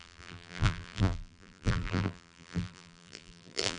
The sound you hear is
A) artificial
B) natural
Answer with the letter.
A